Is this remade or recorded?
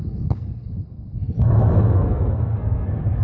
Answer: remade